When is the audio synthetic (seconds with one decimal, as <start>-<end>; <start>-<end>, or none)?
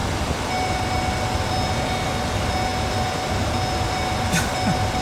none